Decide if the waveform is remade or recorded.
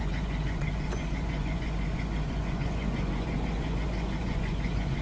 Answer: remade